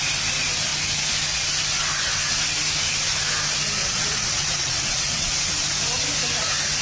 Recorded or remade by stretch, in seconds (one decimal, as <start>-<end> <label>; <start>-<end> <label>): 0.0-3.8 recorded; 3.8-5.3 remade; 5.3-6.8 recorded